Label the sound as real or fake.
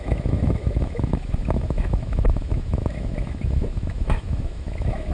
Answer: fake